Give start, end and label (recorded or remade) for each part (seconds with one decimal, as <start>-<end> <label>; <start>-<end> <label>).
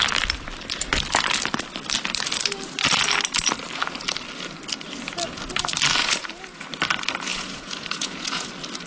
0.0-6.0 recorded; 6.0-6.6 remade; 6.6-7.3 recorded; 7.3-8.5 remade; 8.5-8.9 recorded